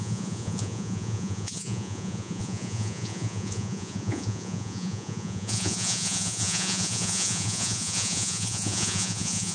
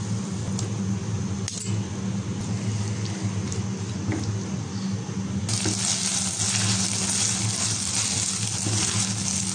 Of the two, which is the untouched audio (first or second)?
second